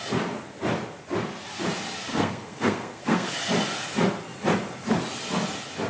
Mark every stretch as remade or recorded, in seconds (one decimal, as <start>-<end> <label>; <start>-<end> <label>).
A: 0.0-2.1 recorded; 2.1-3.3 remade; 3.3-5.9 recorded

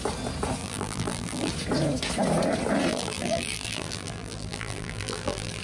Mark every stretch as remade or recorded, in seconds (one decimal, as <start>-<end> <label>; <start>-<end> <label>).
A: 0.0-0.6 recorded; 0.6-1.5 remade; 1.5-2.9 recorded; 2.9-5.6 remade

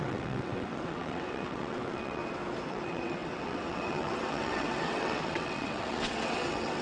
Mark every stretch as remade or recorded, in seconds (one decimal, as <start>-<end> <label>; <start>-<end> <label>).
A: 0.0-2.2 remade; 2.2-2.7 recorded; 2.7-6.8 remade

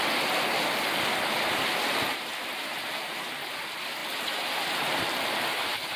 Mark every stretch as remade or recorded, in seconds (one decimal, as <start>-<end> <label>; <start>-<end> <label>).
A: 0.0-4.0 recorded; 4.0-6.0 remade

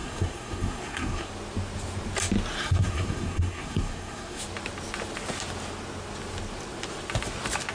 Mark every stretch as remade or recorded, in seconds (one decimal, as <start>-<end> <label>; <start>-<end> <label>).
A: 0.0-1.3 remade; 1.3-2.5 recorded; 2.5-4.4 remade; 4.4-7.7 recorded

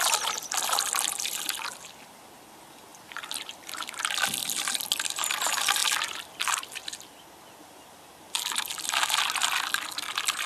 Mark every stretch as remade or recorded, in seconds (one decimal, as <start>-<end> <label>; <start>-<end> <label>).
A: 0.0-2.9 recorded; 2.9-4.2 remade; 4.2-10.5 recorded

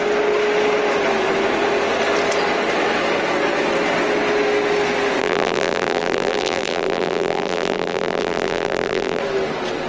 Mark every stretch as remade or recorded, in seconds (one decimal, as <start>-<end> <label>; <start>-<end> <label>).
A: 0.0-5.2 recorded; 5.2-9.2 remade; 9.2-9.9 recorded

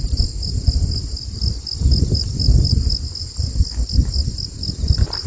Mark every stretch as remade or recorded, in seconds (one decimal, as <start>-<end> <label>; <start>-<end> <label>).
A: 0.0-5.3 recorded